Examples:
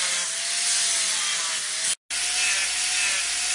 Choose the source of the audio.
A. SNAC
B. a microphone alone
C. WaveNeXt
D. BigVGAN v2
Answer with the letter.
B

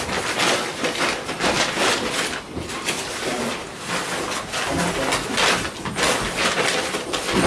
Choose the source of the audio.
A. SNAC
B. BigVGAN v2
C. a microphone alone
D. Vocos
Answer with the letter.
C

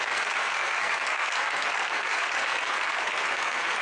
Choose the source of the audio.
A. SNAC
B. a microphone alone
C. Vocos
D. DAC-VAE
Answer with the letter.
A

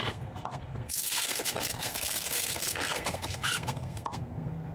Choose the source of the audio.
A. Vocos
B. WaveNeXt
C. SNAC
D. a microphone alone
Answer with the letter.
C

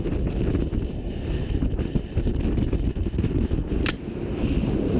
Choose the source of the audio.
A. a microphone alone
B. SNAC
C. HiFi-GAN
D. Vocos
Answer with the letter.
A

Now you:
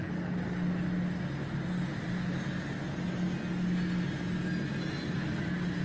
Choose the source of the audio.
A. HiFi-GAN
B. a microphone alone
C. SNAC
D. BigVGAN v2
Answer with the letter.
B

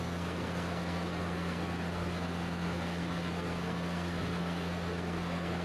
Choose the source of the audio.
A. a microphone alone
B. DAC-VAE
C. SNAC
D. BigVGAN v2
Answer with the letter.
C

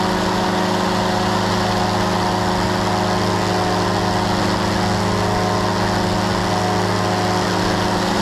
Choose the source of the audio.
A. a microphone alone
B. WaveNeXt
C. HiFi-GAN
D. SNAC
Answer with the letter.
A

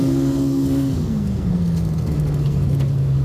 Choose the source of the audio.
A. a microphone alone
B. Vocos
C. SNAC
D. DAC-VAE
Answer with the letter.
C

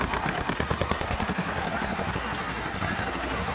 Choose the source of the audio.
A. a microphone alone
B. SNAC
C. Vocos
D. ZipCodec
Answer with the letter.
B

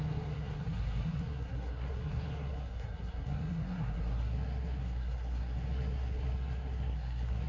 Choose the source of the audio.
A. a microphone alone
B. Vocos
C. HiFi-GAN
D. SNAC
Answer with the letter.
D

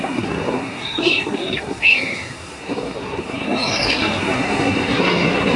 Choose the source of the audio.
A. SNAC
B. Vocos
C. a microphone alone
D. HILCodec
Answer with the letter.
A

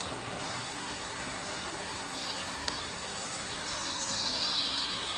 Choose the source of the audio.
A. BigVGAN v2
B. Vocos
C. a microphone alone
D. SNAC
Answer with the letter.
D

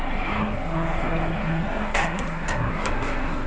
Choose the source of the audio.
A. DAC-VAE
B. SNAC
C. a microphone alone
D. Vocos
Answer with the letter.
B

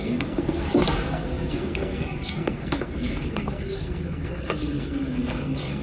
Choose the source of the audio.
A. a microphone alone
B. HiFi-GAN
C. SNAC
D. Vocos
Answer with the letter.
C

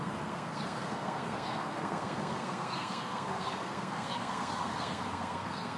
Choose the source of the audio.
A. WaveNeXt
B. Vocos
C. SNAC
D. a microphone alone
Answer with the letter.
C